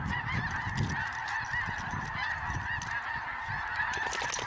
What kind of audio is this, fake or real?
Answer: real